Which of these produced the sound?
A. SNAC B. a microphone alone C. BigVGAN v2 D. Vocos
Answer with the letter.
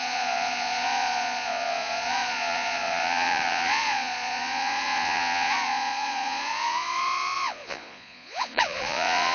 D